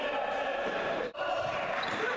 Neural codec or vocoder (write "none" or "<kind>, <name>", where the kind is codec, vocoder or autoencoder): vocoder, BigVGAN v2